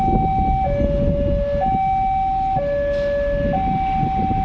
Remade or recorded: recorded